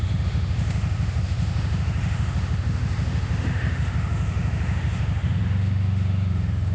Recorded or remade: remade